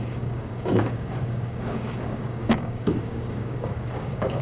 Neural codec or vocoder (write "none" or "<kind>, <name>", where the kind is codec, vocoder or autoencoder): codec, DAC